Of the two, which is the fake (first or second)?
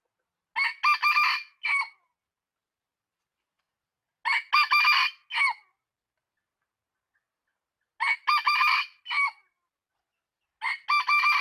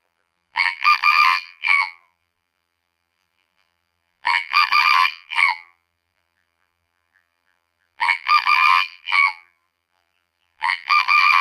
second